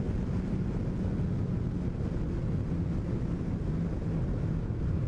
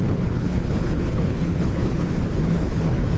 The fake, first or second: second